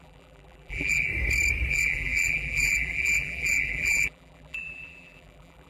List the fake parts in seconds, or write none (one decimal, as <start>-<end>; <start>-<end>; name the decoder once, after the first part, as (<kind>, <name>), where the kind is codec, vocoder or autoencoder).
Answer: 0.0-1.1 (vocoder, BigVGAN v2); 1.7-5.7